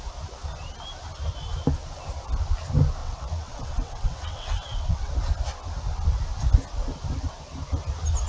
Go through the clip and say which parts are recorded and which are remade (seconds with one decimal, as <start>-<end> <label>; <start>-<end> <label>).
0.0-3.0 recorded; 3.0-5.1 remade; 5.1-8.3 recorded